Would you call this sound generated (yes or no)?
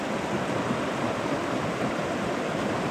no